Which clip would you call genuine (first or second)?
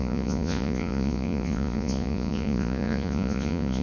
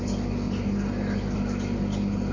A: second